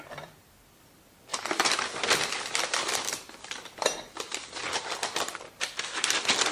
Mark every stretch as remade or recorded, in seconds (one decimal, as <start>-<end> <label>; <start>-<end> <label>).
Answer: 0.0-1.3 remade; 1.3-5.2 recorded; 5.2-6.5 remade